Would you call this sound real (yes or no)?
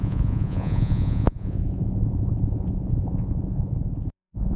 no